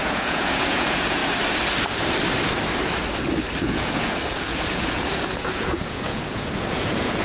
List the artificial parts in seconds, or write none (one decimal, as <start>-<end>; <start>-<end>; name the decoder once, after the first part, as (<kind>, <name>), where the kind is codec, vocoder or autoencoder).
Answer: 0.0-1.2 (vocoder, Vocos); 3.6-7.2